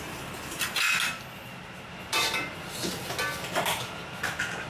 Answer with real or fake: real